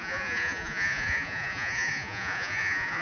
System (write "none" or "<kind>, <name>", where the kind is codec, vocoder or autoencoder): vocoder, Vocos